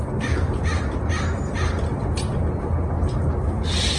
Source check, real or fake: real